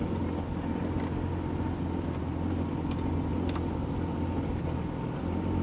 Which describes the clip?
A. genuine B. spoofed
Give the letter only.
A